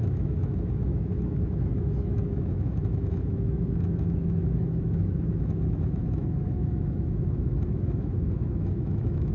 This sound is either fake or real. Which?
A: fake